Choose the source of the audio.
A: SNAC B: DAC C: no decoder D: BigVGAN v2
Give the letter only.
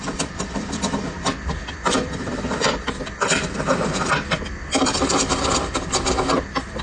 D